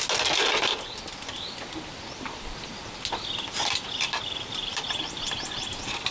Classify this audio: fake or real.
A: real